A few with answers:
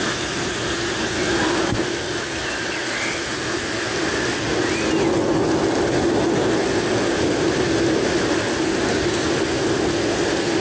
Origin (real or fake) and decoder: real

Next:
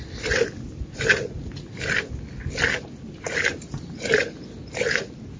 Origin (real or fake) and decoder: real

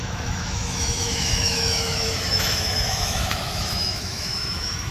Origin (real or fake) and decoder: fake, autoencoder, DAC-VAE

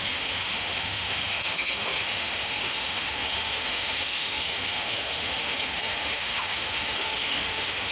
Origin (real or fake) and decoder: fake, autoencoder, DAC-VAE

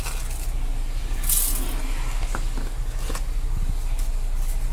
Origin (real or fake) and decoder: real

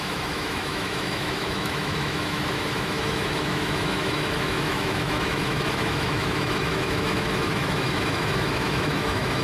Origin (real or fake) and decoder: fake, autoencoder, DAC-VAE